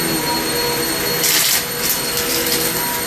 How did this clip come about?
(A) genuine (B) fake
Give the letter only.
A